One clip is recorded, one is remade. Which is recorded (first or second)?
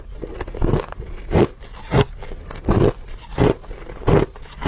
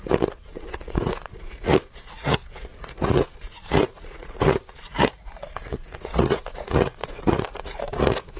first